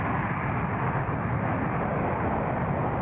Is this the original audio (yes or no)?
yes